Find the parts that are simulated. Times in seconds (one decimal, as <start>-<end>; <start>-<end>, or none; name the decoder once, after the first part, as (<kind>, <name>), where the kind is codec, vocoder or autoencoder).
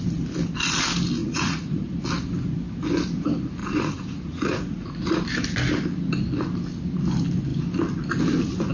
1.2-1.9 (vocoder, Vocos); 3.6-5.3